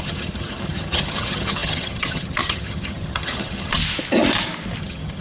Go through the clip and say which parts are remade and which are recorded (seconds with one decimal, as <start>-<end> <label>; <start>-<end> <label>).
0.0-3.8 remade; 3.8-4.8 recorded; 4.8-5.2 remade